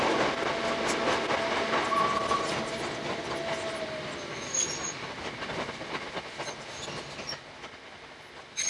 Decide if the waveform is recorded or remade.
recorded